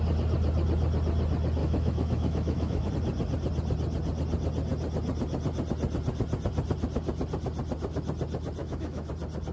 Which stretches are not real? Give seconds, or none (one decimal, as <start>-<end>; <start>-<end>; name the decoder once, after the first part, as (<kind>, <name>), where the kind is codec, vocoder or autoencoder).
1.6-2.9 (autoencoder, DAC-VAE); 8.6-9.1